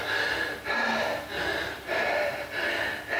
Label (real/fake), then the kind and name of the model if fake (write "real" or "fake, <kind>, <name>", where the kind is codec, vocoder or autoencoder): fake, vocoder, BigVGAN v2